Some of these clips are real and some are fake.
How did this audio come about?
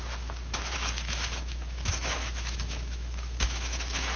fake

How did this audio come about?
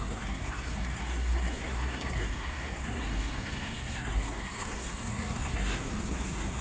fake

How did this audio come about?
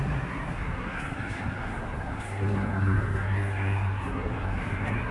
fake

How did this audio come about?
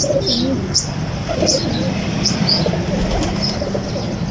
real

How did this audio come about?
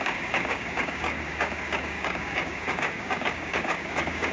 fake